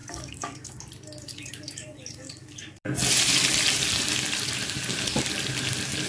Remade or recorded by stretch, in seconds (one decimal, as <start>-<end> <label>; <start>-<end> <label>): 0.0-0.8 remade; 0.8-1.3 recorded; 1.3-2.6 remade; 2.6-6.1 recorded

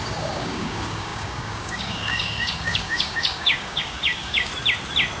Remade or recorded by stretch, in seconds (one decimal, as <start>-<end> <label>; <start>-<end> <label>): 0.0-4.5 remade; 4.5-5.2 recorded

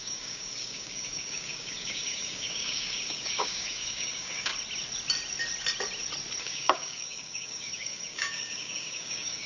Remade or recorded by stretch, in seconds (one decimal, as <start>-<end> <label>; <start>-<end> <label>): 0.0-4.5 remade; 4.5-6.4 recorded; 6.4-9.5 remade

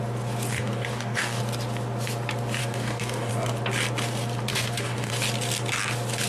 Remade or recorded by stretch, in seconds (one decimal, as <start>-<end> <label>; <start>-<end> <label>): 0.0-0.5 recorded; 0.5-1.4 remade; 1.4-2.6 recorded; 2.6-3.3 remade; 3.3-4.5 recorded; 4.5-5.1 remade; 5.1-6.3 recorded

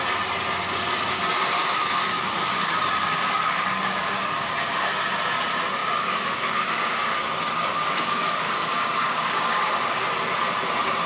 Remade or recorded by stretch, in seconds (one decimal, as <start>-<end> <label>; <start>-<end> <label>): 0.0-1.6 recorded; 1.6-4.5 remade; 4.5-5.8 recorded; 5.8-7.3 remade; 7.3-7.7 recorded; 7.7-10.0 remade; 10.0-11.1 recorded

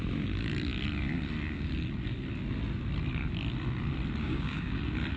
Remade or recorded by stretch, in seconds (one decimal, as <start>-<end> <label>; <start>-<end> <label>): 0.0-4.2 recorded; 4.2-4.8 remade; 4.8-5.2 recorded

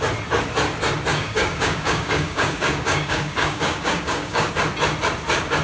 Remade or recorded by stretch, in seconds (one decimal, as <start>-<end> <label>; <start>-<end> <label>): 0.0-1.1 recorded; 1.1-4.5 remade; 4.5-5.6 recorded

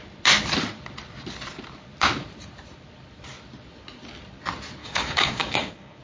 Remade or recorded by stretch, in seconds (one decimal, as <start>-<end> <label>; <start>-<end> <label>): 0.0-4.8 recorded; 4.8-6.0 remade